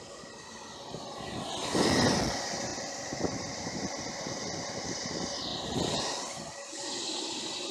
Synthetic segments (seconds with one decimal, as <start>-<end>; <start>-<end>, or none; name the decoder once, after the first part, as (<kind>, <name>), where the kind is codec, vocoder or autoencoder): 2.7-3.8 (vocoder, BigVGAN v2); 5.5-6.4